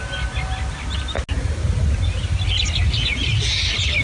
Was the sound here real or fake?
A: real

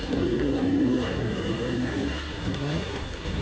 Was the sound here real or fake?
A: fake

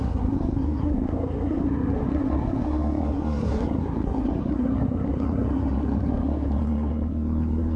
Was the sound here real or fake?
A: fake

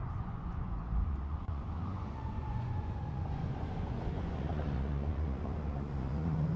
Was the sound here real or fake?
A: fake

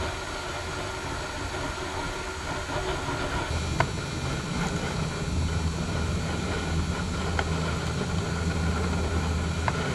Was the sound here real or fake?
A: real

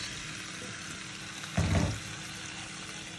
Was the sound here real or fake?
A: real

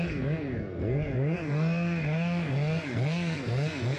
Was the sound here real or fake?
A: fake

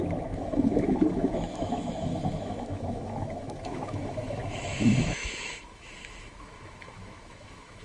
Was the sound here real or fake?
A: fake